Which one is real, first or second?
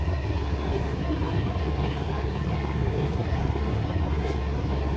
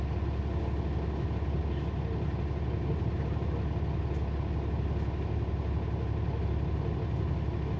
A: second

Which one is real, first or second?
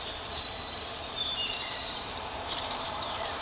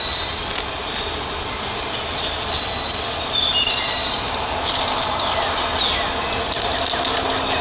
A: second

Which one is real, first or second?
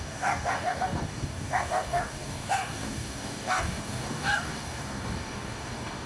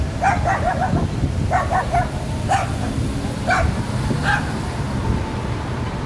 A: second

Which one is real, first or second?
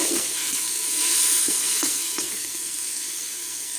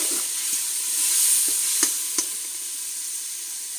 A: second